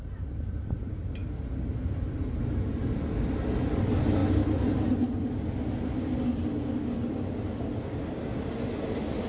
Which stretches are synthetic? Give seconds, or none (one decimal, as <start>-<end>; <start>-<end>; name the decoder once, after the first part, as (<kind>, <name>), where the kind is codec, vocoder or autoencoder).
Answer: none